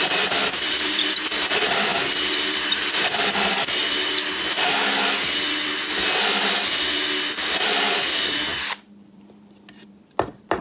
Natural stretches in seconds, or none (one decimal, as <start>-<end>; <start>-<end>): 4.1-8.1; 8.5-9.1